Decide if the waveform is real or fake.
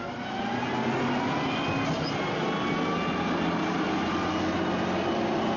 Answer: real